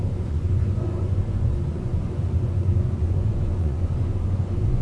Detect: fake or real fake